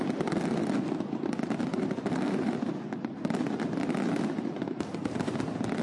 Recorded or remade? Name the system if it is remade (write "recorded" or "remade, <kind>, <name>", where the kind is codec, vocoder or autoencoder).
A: recorded